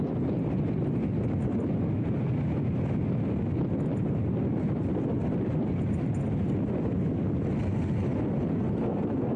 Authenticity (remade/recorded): recorded